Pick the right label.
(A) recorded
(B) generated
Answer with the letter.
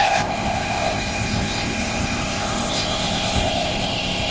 B